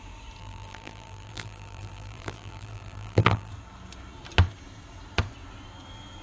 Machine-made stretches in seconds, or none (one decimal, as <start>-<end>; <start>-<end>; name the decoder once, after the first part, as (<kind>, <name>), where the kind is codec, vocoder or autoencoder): 0.4-3.5 (vocoder, BigVGAN v2)